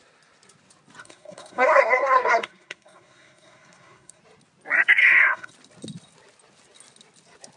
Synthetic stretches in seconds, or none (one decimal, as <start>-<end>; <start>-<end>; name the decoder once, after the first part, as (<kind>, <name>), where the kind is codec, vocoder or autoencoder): 1.0-4.2 (codec, SNAC); 5.0-5.5